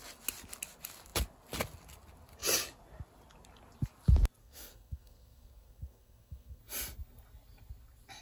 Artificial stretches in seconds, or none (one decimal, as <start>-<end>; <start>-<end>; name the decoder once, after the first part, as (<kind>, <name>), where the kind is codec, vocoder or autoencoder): 4.4-6.6 (codec, SNAC)

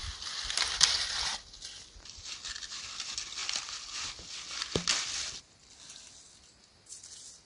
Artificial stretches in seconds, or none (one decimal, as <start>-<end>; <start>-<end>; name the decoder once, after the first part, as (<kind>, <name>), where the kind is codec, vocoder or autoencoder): none

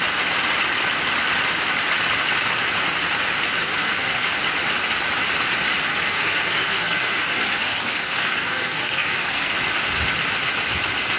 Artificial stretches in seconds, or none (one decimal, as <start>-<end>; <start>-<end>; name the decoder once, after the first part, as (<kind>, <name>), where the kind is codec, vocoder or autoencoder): 3.6-4.3 (codec, SNAC); 5.9-9.5

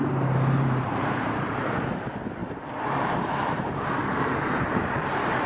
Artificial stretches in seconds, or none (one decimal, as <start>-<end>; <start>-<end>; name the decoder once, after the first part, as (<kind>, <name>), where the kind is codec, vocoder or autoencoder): 0.0-5.5 (vocoder, BigVGAN v2)

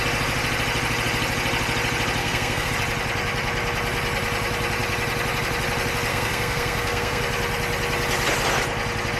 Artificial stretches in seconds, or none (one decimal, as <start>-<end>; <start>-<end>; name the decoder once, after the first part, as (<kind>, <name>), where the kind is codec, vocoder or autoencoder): 2.2-2.7 (codec, SNAC); 6.1-7.2

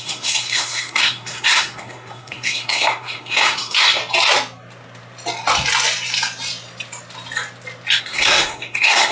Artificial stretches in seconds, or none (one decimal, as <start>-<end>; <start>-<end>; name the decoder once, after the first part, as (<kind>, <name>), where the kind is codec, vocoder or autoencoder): 0.0-4.0 (codec, SNAC); 8.0-9.1

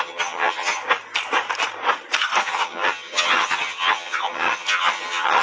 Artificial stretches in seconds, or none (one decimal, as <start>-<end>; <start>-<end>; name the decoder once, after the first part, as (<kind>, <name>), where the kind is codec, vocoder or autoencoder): 0.0-0.8 (vocoder, HiFi-GAN); 2.4-5.4

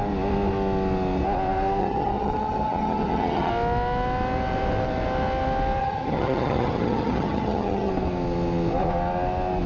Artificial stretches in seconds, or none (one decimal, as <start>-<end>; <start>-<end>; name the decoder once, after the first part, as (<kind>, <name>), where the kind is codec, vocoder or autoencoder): 1.8-3.5 (vocoder, HiFi-GAN); 5.8-7.9